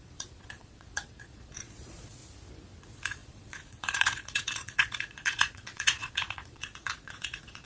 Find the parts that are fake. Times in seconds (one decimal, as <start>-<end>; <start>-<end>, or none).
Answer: 0.0-2.2; 2.8-7.7